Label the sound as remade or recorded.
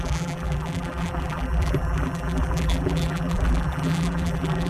remade